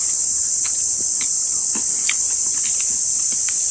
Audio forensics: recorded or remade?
recorded